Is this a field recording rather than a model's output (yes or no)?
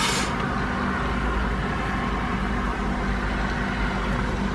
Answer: yes